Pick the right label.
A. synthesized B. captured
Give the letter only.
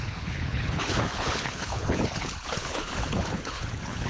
A